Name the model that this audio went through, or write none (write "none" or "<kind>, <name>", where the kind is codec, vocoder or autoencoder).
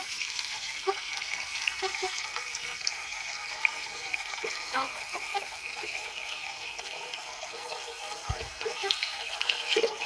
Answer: codec, SNAC